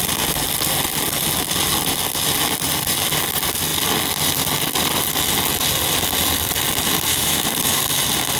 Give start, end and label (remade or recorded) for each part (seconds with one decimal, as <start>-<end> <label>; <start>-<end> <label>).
0.0-7.1 recorded; 7.1-7.8 remade; 7.8-8.4 recorded